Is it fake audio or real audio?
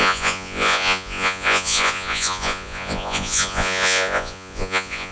fake